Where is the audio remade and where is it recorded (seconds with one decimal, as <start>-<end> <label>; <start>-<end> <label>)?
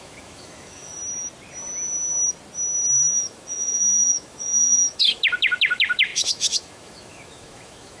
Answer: 0.0-1.0 remade; 1.0-2.9 recorded; 2.9-8.0 remade